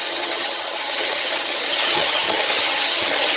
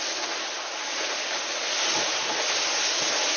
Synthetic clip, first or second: first